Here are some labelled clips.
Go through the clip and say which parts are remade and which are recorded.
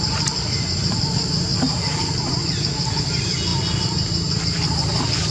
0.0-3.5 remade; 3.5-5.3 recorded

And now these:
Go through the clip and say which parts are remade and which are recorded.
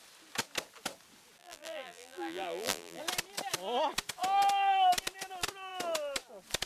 0.0-1.4 recorded; 1.4-3.0 remade; 3.0-6.7 recorded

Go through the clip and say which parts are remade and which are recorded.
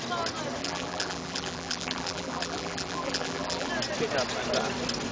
0.0-0.6 recorded; 0.6-3.7 remade; 3.7-5.1 recorded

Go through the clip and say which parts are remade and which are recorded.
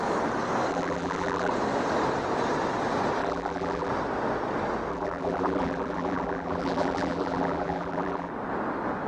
0.0-0.7 recorded; 0.7-1.5 remade; 1.5-3.2 recorded; 3.2-3.9 remade; 3.9-4.9 recorded; 4.9-8.3 remade; 8.3-9.1 recorded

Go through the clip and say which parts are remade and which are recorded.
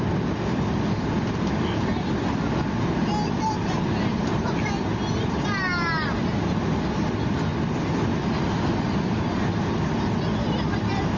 0.0-11.2 recorded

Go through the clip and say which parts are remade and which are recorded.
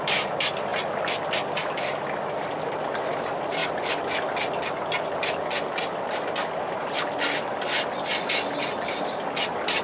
0.0-9.8 recorded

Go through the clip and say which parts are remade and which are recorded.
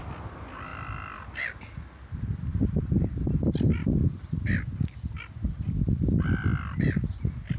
0.0-7.6 recorded